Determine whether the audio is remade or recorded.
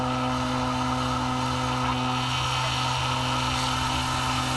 recorded